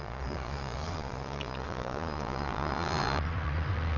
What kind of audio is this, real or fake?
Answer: fake